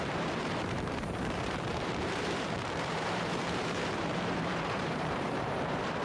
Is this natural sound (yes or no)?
no